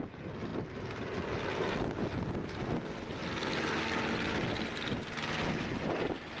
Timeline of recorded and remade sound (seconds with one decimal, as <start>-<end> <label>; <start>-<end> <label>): 0.0-6.4 recorded